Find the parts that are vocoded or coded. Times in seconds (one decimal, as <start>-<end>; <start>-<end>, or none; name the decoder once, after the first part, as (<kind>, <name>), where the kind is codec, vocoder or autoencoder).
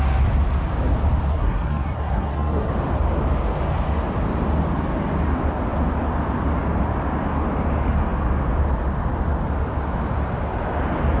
1.3-2.7 (codec, SNAC)